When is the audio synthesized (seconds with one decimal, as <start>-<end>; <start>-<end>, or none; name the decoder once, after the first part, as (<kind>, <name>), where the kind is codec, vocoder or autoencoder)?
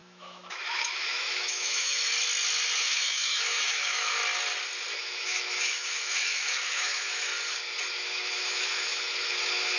0.0-2.1 (autoencoder, DAC-VAE); 2.8-4.2; 4.9-7.3; 7.9-9.8